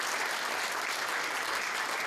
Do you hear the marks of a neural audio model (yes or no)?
no